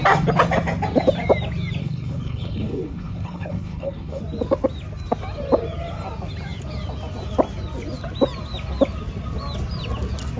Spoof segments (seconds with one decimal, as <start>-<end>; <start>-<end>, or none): 1.8-4.2

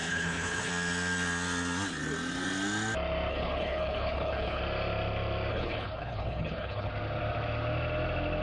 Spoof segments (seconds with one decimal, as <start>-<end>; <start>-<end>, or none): 0.0-0.7; 3.3-4.6; 5.5-6.9

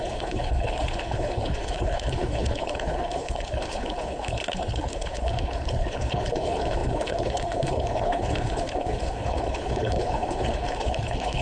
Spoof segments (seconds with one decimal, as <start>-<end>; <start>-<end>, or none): 0.0-11.4

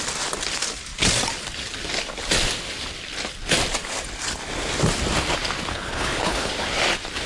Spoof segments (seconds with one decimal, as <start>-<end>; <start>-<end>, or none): 5.7-6.5

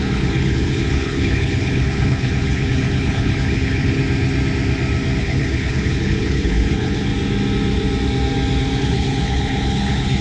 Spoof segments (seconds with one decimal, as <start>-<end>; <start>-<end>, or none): 0.0-4.0; 5.2-7.1; 8.8-10.2

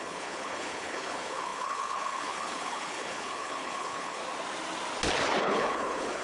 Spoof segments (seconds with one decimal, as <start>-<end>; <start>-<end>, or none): 0.0-4.2; 5.4-6.2